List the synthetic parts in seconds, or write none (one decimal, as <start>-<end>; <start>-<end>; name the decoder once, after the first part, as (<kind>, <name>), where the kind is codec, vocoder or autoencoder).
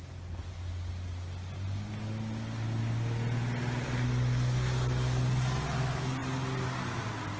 none